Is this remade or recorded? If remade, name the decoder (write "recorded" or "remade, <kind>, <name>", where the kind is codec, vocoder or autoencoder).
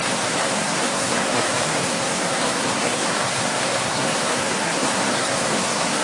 remade, codec, SNAC